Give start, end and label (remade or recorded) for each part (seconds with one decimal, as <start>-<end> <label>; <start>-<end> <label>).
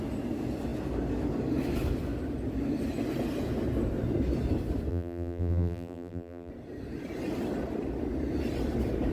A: 0.0-4.9 recorded; 4.9-6.5 remade; 6.5-9.1 recorded